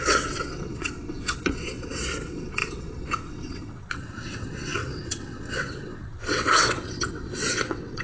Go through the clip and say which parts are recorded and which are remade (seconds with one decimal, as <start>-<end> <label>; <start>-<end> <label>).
0.0-8.0 remade

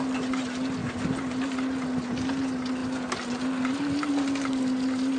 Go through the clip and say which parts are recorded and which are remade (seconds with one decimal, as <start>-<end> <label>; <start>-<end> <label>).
0.0-5.2 recorded

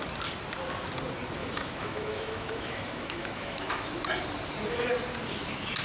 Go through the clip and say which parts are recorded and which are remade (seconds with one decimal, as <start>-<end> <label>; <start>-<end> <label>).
0.0-1.4 recorded; 1.4-3.9 remade; 3.9-5.8 recorded

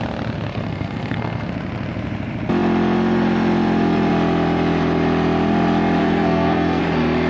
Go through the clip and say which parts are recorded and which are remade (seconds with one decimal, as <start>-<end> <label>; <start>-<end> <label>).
0.0-0.5 recorded; 0.5-1.5 remade; 1.5-6.0 recorded; 6.0-6.8 remade; 6.8-7.3 recorded

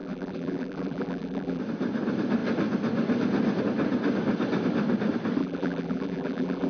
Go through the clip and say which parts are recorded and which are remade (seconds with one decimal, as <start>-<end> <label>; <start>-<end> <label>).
0.0-1.6 remade; 1.6-5.4 recorded; 5.4-6.7 remade

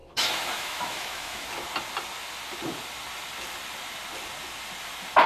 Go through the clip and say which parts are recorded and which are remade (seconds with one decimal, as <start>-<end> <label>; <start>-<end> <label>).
0.0-1.5 remade; 1.5-5.3 recorded